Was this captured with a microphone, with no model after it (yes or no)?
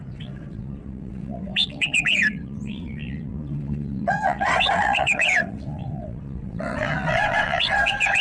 no